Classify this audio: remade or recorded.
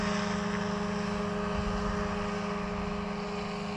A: recorded